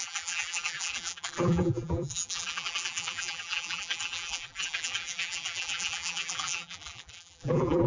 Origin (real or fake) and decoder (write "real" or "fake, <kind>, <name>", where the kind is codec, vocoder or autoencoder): fake, vocoder, BigVGAN v2